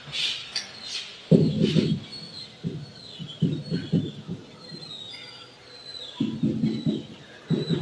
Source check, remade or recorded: recorded